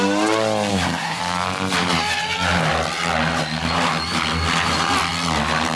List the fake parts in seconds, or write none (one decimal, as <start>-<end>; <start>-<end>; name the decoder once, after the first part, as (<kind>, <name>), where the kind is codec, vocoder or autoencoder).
0.7-1.2 (codec, SNAC)